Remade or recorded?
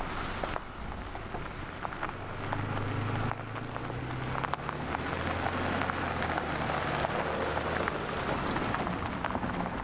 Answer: recorded